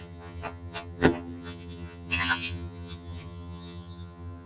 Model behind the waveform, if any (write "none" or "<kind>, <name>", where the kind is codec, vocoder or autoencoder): vocoder, HiFi-GAN